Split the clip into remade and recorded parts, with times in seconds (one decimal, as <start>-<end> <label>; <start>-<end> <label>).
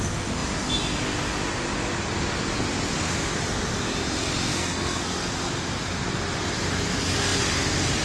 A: 0.0-4.5 recorded; 4.5-5.2 remade; 5.2-8.0 recorded